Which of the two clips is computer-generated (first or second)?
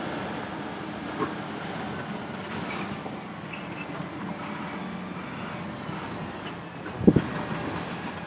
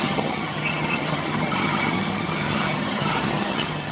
second